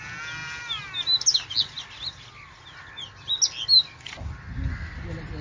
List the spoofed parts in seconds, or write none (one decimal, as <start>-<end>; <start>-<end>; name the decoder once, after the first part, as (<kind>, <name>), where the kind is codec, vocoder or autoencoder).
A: none